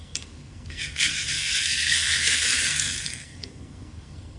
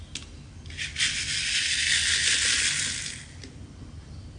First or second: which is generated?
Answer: first